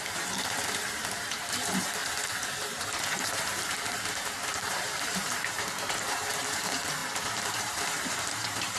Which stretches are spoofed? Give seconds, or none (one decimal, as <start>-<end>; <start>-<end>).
0.0-2.0; 2.6-8.8